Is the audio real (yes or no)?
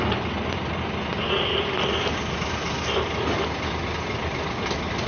yes